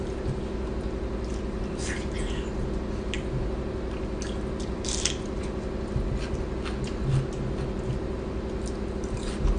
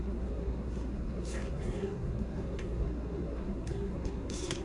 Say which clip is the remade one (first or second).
second